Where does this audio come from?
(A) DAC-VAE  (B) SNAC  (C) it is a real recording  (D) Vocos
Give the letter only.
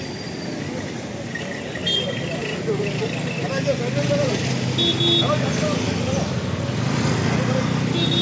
C